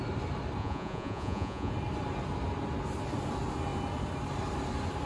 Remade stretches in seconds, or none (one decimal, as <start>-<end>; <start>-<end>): 0.6-1.7